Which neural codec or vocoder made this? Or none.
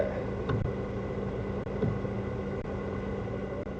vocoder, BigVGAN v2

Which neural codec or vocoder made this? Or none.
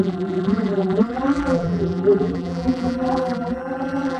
vocoder, BigVGAN v2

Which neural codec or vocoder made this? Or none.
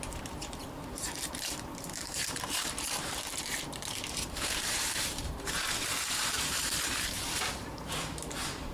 vocoder, BigVGAN v2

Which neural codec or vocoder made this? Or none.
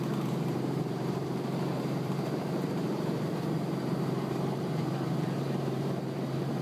vocoder, BigVGAN v2